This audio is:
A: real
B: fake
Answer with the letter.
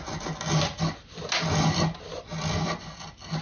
A